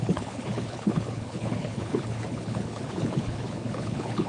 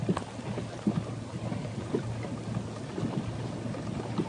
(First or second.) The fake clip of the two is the first